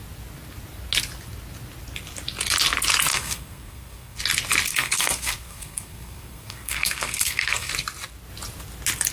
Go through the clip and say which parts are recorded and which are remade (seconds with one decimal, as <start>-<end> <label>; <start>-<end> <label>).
0.0-3.1 recorded; 3.1-4.2 remade; 4.2-4.7 recorded; 4.7-7.7 remade; 7.7-9.1 recorded